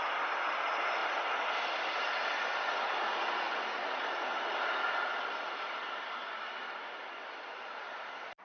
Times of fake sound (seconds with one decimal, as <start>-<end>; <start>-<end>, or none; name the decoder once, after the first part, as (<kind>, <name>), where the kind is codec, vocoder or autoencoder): none